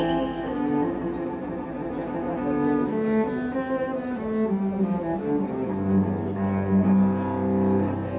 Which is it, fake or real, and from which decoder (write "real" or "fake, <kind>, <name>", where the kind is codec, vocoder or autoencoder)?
real